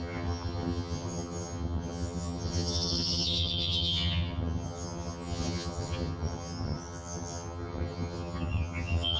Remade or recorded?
remade